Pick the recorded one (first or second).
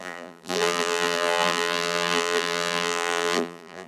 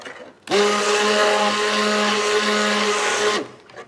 second